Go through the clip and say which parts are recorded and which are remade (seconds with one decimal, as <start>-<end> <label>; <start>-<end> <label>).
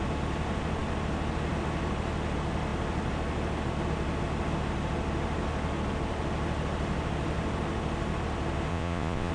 0.0-8.7 recorded; 8.7-9.3 remade